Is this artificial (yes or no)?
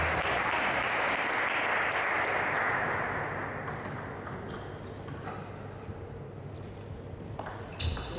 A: no